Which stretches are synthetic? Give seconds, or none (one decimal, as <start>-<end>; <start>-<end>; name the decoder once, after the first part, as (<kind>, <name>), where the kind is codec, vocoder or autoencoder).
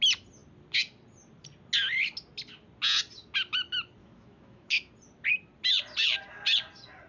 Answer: 4.0-4.9 (autoencoder, DAC-VAE)